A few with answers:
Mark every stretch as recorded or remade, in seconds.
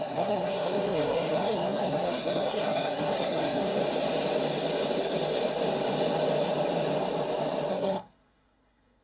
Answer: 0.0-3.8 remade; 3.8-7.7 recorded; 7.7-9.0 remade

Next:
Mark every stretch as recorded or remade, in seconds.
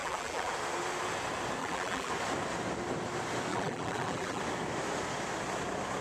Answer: 0.0-0.5 remade; 0.5-1.6 recorded; 1.6-2.1 remade; 2.1-3.5 recorded; 3.5-4.4 remade; 4.4-6.0 recorded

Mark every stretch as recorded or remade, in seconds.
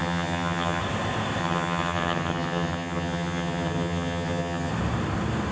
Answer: 0.0-0.8 remade; 0.8-1.4 recorded; 1.4-4.7 remade; 4.7-5.5 recorded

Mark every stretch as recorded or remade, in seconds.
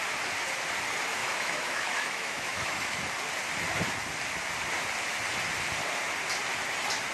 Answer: 0.0-1.2 recorded; 1.2-3.0 remade; 3.0-7.1 recorded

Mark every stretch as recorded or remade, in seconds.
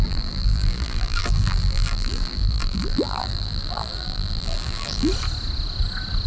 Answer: 0.0-5.1 remade; 5.1-6.3 recorded